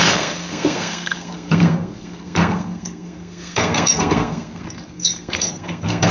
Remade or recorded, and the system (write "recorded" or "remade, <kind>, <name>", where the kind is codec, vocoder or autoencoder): remade, codec, SNAC